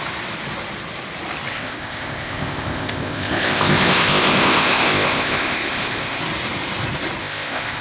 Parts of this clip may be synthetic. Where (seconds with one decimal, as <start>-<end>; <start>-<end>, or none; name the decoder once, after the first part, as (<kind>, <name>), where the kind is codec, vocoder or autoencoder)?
1.5-6.2 (codec, ZipCodec); 7.2-7.8